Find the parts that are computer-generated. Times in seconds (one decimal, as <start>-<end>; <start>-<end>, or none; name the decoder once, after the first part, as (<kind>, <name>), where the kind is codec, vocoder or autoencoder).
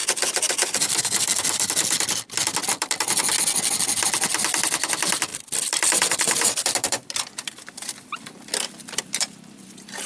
0.0-1.0 (vocoder, BigVGAN v2); 2.6-3.2; 5.3-10.1